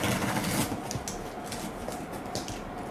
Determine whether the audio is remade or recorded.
recorded